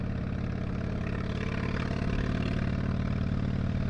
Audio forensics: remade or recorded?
recorded